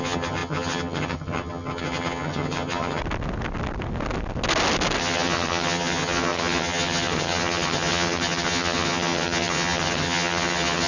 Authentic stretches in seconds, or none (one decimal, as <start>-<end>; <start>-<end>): 3.0-5.0